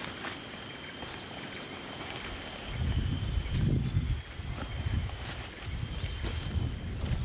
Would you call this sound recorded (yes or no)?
yes